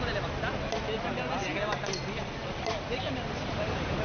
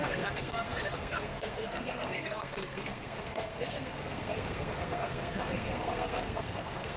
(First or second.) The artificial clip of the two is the second